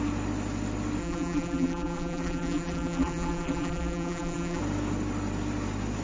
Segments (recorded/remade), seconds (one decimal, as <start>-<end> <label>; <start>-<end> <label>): 0.0-1.0 recorded; 1.0-4.6 remade; 4.6-6.0 recorded